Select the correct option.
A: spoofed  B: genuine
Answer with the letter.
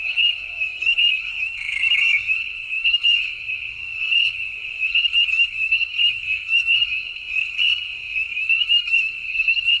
A